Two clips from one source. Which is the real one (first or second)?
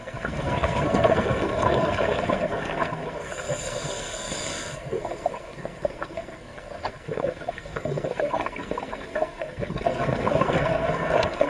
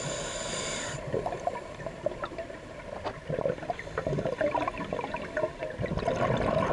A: second